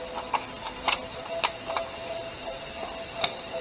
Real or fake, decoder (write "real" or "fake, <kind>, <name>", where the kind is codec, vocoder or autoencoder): real